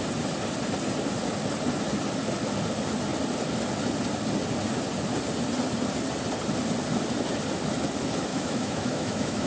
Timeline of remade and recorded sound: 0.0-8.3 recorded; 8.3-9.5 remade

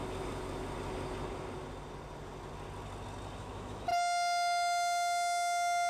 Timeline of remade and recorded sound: 0.0-3.4 recorded; 3.4-3.9 remade; 3.9-5.9 recorded